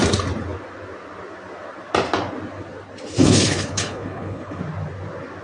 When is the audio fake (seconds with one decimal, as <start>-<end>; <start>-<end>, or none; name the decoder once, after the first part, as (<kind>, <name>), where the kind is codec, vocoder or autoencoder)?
3.2-4.6 (codec, HILCodec)